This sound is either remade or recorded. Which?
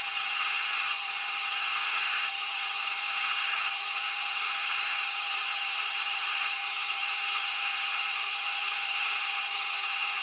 remade